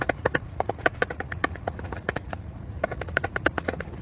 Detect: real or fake fake